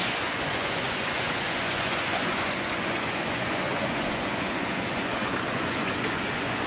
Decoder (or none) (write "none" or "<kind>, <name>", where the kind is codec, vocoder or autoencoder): vocoder, Vocos